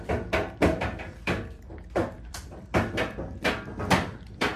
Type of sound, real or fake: fake